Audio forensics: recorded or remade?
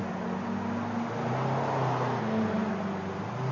recorded